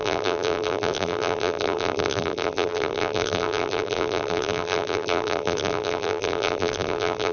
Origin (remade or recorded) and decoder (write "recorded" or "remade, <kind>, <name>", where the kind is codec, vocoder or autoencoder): remade, vocoder, BigVGAN v2